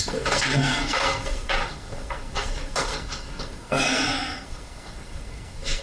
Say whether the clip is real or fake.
fake